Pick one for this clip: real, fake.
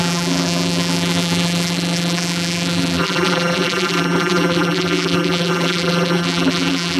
fake